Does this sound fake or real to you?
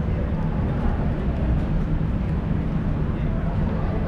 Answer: real